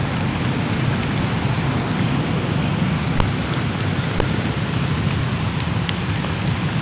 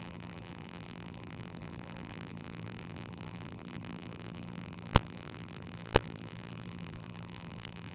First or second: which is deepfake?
second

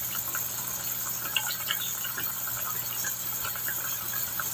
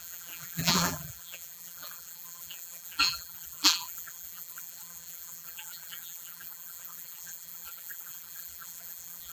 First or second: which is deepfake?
second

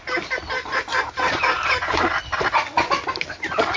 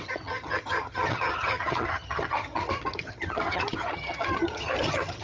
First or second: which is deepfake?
second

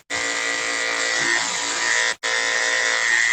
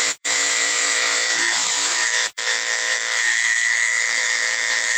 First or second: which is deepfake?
second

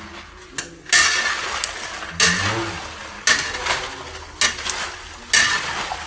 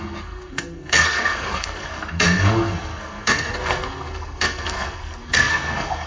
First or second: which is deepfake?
second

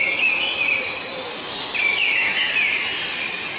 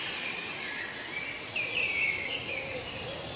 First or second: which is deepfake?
second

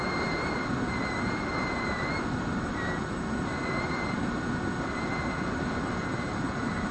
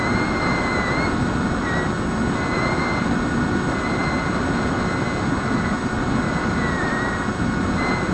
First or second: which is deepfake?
first